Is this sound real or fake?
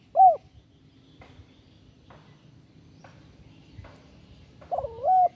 real